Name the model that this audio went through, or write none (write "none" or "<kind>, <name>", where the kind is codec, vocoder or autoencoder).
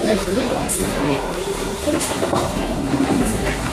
codec, SNAC